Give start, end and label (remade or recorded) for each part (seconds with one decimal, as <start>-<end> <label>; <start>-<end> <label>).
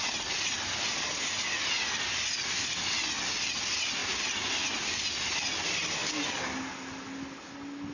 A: 0.0-7.9 recorded